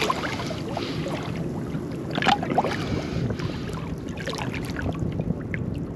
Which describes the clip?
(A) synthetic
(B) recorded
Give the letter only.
B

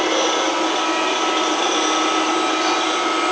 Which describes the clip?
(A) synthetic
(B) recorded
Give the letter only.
B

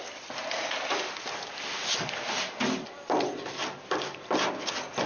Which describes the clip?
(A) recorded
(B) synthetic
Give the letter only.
A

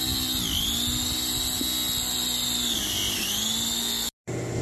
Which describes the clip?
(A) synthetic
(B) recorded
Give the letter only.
B